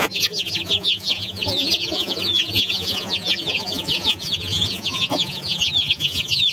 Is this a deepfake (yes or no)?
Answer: yes